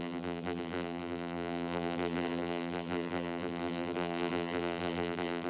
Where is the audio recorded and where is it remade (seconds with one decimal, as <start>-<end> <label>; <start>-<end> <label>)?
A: 0.0-5.5 remade